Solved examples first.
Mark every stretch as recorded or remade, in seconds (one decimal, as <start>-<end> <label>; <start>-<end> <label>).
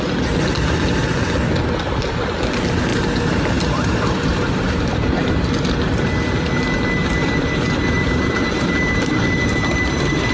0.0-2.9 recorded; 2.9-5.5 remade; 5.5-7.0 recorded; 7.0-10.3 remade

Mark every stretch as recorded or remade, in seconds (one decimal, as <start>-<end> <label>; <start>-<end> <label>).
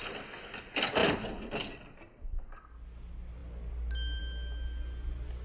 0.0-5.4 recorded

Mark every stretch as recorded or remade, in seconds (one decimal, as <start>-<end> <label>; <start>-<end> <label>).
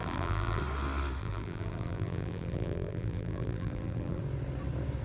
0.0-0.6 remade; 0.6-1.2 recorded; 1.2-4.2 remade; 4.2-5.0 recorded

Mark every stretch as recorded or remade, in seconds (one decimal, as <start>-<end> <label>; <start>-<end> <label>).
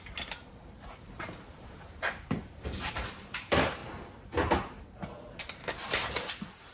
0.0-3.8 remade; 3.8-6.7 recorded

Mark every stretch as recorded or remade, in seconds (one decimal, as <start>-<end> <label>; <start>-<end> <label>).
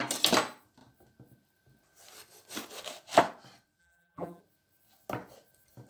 0.0-3.8 recorded; 3.8-4.4 remade; 4.4-5.9 recorded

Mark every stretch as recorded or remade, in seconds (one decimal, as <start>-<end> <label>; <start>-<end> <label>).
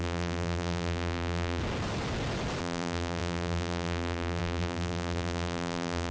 0.0-1.6 remade; 1.6-2.6 recorded; 2.6-6.1 remade